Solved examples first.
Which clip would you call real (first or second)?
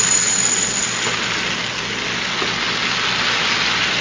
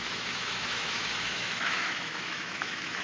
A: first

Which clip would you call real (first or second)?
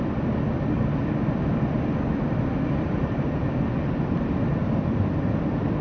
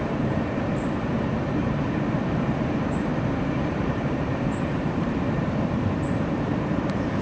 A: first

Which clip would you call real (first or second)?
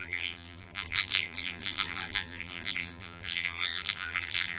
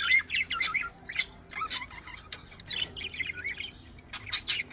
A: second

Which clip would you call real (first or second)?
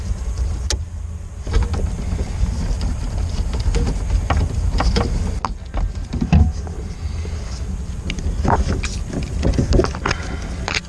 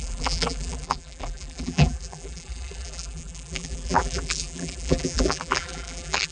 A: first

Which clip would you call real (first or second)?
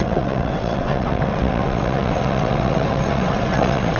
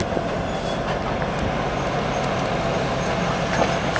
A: second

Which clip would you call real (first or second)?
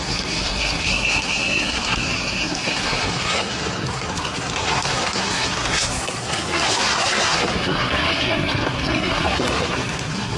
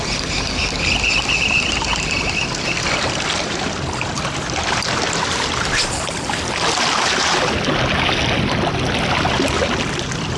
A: second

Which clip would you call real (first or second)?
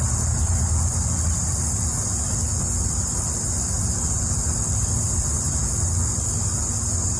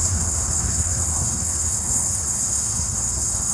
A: first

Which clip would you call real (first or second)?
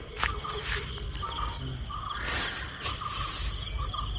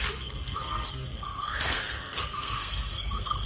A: first